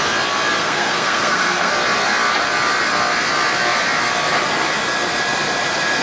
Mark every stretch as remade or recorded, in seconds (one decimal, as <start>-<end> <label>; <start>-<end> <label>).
0.0-0.6 recorded; 0.6-1.7 remade; 1.7-6.0 recorded